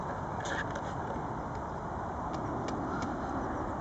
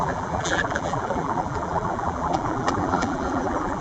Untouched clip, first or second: first